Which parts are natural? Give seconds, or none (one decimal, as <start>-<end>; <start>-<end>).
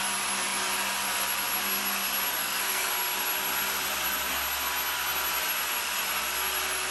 0.0-2.4; 2.9-6.9